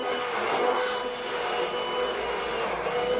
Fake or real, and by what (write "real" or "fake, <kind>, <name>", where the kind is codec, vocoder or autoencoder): real